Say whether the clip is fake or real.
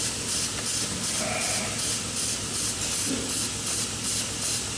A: real